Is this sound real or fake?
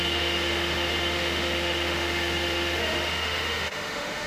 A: fake